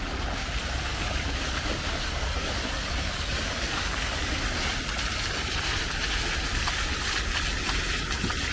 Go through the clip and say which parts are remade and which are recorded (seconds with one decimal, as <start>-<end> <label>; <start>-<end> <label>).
0.0-0.9 recorded; 0.9-4.4 remade; 4.4-8.5 recorded